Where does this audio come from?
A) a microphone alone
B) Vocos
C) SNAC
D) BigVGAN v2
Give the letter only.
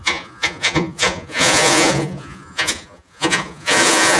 B